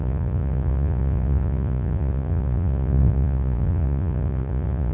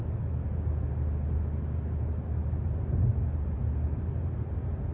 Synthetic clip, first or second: first